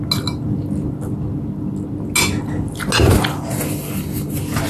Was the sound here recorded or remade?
recorded